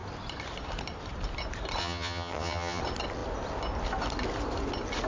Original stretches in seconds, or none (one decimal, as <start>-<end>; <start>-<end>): 0.0-1.8; 2.8-5.1

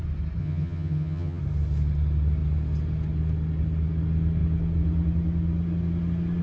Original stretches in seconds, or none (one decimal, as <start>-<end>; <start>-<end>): 0.0-0.4; 1.4-6.4

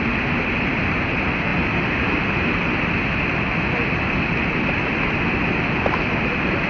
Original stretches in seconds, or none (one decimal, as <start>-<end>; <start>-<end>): 0.0-6.7

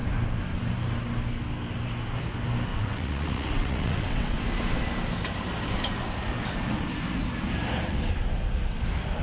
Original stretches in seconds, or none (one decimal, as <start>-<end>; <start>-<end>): 0.0-2.7; 4.4-9.2

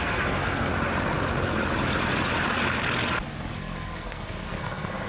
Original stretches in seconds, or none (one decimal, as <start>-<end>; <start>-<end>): 0.7-3.5

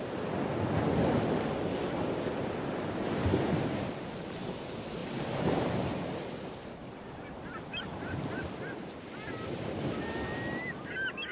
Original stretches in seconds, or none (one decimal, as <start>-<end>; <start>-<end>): 0.0-11.3